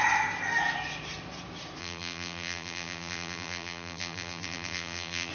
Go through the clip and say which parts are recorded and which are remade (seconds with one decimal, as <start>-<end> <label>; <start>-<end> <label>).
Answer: 0.0-1.8 recorded; 1.8-5.3 remade